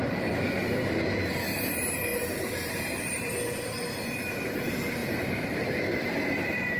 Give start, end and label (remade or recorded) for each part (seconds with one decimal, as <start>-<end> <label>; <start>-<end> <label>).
0.0-2.1 recorded; 2.1-3.3 remade; 3.3-5.0 recorded; 5.0-5.8 remade; 5.8-6.8 recorded